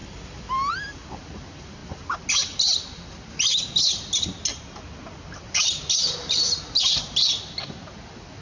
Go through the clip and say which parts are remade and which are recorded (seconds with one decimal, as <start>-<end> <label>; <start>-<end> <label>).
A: 0.0-8.4 recorded